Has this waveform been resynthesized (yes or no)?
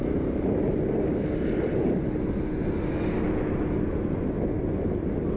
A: no